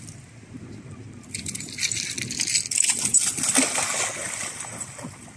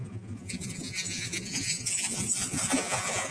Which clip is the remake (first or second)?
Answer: second